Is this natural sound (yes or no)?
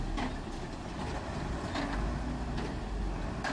yes